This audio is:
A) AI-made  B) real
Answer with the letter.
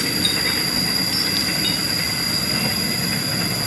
B